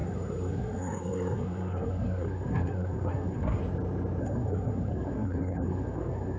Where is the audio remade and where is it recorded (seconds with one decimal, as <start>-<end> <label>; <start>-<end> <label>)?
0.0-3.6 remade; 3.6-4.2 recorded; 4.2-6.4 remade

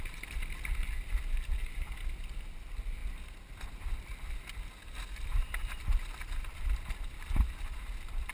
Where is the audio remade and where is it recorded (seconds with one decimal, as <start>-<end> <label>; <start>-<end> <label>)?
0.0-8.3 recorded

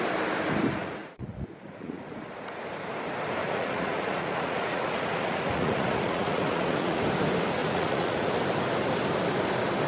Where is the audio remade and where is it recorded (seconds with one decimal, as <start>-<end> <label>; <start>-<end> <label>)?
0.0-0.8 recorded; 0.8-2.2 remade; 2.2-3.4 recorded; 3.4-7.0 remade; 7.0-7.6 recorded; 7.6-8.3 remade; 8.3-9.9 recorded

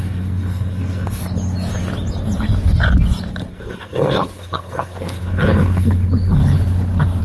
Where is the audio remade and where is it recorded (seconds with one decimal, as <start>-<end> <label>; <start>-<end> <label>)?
0.0-1.2 remade; 1.2-3.5 recorded; 3.5-6.4 remade; 6.4-7.2 recorded